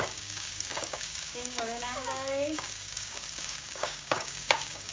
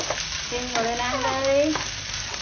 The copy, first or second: first